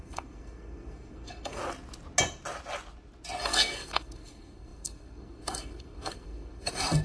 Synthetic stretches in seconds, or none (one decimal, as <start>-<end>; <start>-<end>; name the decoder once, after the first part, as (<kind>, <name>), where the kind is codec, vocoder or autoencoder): 0.0-1.6 (codec, SNAC); 3.4-7.0